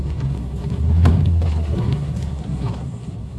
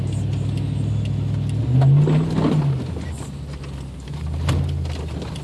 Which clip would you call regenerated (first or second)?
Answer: first